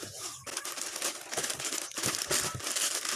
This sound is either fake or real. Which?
real